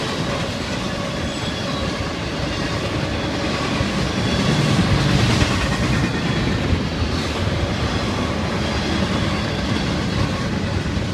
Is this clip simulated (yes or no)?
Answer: no